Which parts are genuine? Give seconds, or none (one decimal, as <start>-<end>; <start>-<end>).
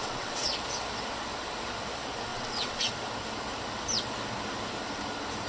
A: 0.5-2.3; 2.9-5.5